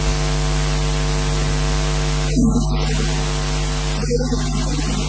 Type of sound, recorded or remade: recorded